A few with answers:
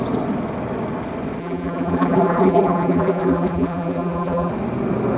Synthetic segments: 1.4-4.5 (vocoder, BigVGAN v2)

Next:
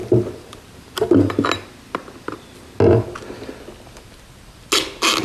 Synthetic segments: 0.0-1.3 (vocoder, BigVGAN v2)

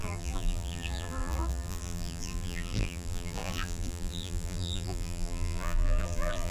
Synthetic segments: 0.0-6.5 (vocoder, BigVGAN v2)